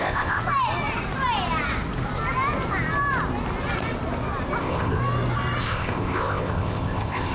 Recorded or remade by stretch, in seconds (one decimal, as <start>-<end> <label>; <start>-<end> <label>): 0.0-0.4 remade; 0.4-4.6 recorded; 4.6-5.0 remade; 5.0-5.6 recorded; 5.6-7.3 remade